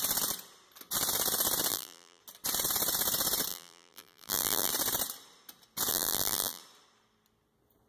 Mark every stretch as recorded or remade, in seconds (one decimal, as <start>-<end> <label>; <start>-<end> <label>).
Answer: 0.0-1.7 recorded; 1.7-2.2 remade; 2.2-3.5 recorded; 3.5-4.7 remade; 4.7-5.9 recorded; 5.9-6.6 remade; 6.6-7.9 recorded